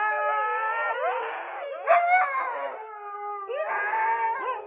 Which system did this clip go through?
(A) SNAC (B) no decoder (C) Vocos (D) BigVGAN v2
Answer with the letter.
B